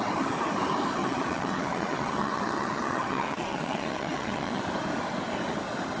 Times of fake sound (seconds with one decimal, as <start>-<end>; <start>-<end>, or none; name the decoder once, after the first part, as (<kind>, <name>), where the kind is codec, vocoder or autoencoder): 1.0-4.6 (vocoder, WaveNeXt)